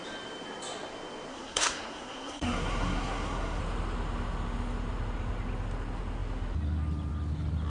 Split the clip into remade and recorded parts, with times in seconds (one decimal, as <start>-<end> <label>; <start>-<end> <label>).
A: 0.0-1.3 recorded; 1.3-3.6 remade; 3.6-7.7 recorded